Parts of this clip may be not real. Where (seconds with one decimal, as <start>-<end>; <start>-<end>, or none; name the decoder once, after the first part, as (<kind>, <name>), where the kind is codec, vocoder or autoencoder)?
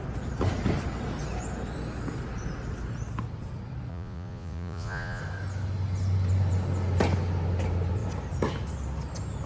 3.9-5.2 (vocoder, Vocos)